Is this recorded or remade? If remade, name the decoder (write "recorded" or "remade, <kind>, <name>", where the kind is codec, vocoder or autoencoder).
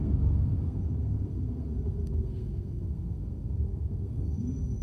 remade, codec, SNAC